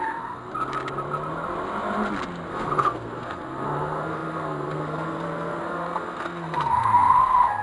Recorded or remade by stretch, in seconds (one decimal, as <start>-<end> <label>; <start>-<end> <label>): 0.0-0.5 remade; 0.5-2.5 recorded; 2.5-7.6 remade

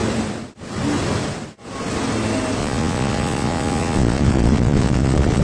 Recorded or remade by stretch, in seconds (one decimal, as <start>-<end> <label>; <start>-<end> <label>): 0.0-2.6 recorded; 2.6-5.4 remade

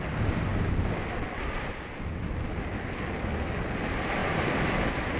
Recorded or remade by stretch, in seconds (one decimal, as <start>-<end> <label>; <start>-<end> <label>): 0.0-4.2 recorded; 4.2-4.7 remade; 4.7-5.2 recorded

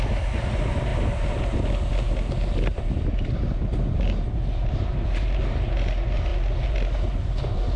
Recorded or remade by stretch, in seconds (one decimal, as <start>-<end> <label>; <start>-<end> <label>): 0.0-7.8 recorded